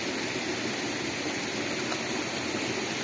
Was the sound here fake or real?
real